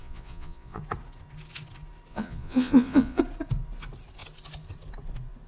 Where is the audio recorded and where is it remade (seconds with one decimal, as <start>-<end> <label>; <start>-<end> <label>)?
0.0-0.8 remade; 0.8-2.1 recorded; 2.1-3.2 remade; 3.2-5.5 recorded